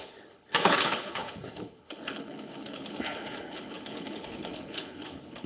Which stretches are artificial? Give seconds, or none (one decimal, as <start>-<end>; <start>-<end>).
0.0-5.5